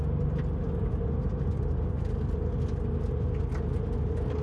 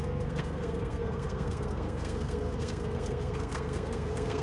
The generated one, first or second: second